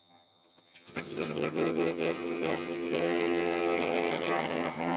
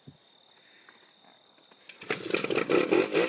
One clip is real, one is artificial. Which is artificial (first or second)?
first